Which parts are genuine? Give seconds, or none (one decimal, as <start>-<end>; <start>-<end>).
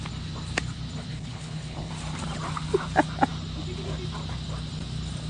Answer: 0.0-1.1; 1.9-5.3